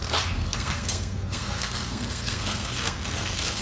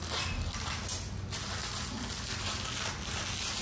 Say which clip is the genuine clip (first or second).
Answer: second